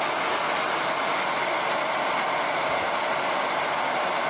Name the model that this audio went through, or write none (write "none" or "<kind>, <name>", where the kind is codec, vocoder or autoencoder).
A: none